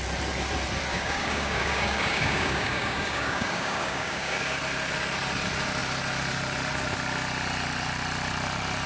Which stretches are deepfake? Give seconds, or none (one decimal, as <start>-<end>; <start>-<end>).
0.9-4.6